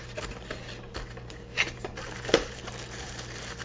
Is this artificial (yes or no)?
yes